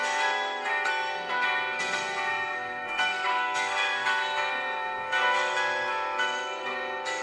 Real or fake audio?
fake